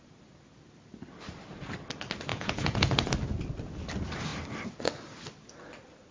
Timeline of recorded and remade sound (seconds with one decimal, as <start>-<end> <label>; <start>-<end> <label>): 0.0-2.3 recorded; 2.3-3.1 remade; 3.1-6.1 recorded